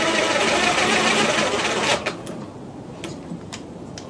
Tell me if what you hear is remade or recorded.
recorded